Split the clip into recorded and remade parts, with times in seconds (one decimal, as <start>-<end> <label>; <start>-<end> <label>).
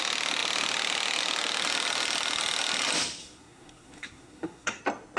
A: 0.0-3.2 recorded; 3.2-4.8 remade; 4.8-5.2 recorded